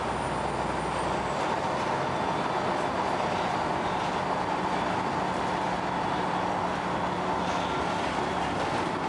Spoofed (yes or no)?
no